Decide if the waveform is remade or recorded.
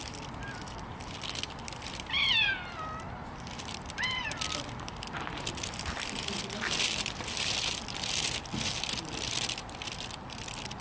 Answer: remade